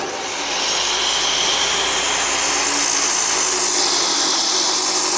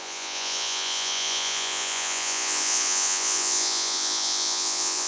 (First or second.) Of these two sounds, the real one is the first